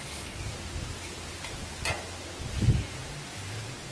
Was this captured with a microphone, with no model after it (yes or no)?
yes